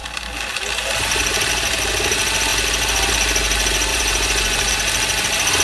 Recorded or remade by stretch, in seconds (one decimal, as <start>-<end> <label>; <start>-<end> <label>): 0.0-3.9 recorded; 3.9-4.7 remade; 4.7-5.6 recorded